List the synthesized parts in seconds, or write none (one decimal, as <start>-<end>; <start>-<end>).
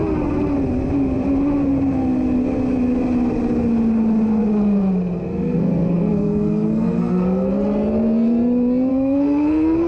5.3-7.5; 8.9-9.9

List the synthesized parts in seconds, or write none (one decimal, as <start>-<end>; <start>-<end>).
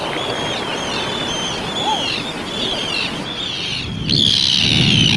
none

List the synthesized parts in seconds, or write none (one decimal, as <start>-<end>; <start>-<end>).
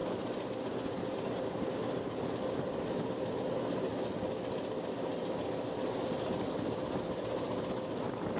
none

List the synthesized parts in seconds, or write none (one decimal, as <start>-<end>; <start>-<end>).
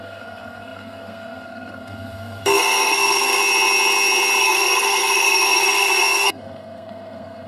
0.0-3.4; 4.4-7.5